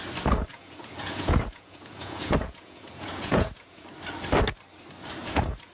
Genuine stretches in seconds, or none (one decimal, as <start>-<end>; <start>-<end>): 0.0-0.5; 3.9-5.2